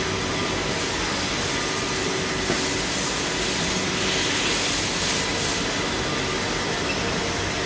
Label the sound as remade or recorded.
recorded